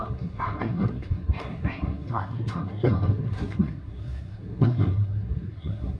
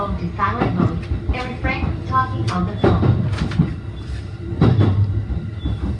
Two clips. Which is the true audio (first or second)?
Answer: second